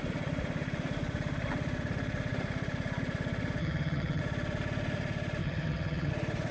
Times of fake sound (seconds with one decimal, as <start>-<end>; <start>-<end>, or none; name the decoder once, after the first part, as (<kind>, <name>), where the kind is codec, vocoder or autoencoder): 3.6-4.2 (vocoder, HiFi-GAN); 5.4-6.1